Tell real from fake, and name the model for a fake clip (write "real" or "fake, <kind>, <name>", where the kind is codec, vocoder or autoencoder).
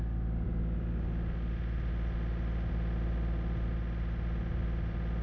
real